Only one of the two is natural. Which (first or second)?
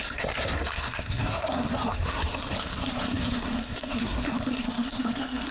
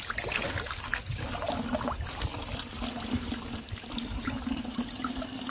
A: second